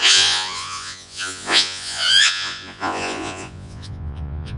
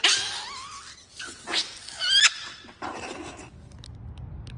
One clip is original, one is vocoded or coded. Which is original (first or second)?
second